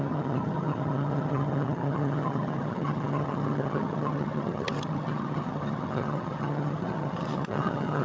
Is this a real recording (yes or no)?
no